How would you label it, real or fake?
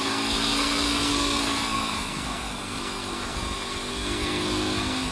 fake